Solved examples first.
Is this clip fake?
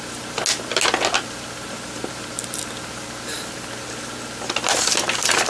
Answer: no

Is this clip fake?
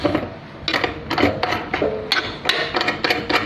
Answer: no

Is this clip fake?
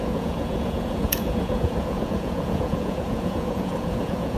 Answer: yes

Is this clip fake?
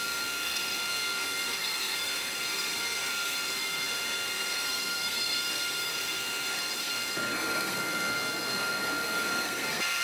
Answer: yes